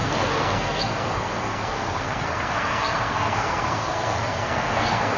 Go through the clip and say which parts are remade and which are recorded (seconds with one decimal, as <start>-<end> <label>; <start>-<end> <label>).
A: 0.0-5.2 remade